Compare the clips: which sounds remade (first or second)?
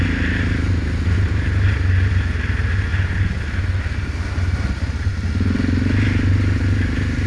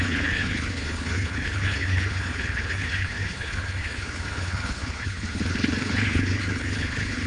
second